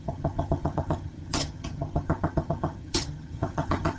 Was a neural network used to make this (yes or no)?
yes